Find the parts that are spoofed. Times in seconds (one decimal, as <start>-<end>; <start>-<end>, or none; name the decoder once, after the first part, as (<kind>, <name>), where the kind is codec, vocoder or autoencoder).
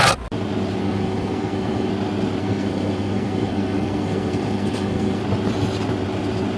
0.8-1.9 (codec, SNAC); 2.4-5.2